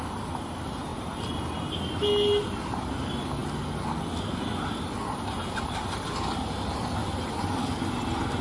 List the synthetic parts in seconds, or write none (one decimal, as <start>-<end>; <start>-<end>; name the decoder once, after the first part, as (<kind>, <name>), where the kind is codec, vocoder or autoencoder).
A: none